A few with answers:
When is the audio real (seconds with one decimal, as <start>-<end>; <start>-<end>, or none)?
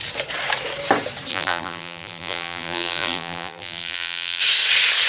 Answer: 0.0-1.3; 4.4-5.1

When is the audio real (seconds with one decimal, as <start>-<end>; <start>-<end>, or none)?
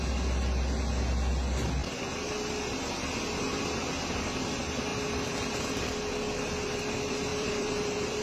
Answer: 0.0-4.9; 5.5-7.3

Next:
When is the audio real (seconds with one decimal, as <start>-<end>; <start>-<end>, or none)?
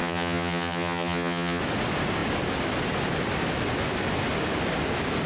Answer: 1.6-5.3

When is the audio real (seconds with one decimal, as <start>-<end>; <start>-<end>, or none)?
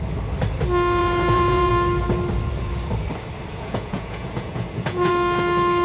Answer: 0.0-1.0; 1.7-3.5; 5.1-5.8